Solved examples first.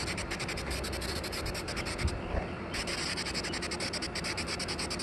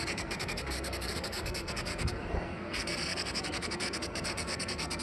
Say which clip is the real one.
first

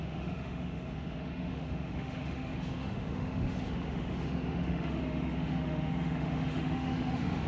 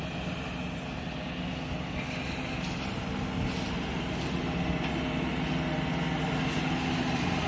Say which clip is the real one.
second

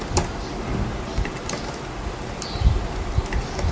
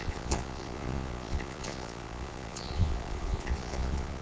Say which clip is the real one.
first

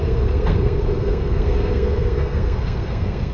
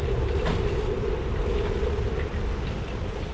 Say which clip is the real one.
second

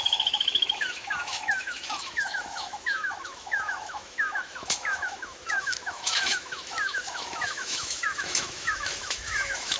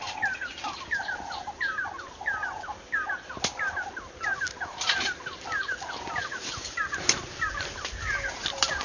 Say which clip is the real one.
second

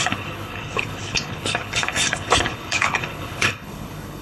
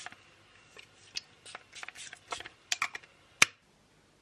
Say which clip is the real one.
second